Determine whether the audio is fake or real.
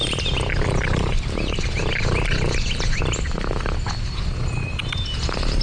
real